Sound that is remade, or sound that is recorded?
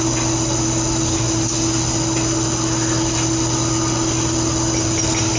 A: recorded